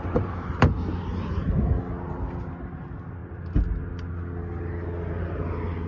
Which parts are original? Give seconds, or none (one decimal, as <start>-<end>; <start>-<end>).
0.0-5.9